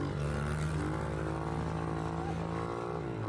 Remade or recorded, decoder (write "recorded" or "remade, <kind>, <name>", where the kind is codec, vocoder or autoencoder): recorded